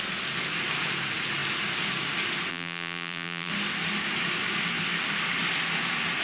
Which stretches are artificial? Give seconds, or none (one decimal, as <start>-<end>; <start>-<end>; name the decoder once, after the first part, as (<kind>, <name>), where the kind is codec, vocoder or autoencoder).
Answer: 2.5-3.5 (vocoder, BigVGAN v2)